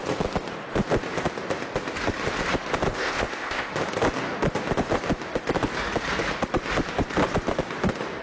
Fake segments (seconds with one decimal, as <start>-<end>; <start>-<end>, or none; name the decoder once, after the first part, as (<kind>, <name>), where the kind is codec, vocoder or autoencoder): 2.9-3.7 (codec, ZipCodec)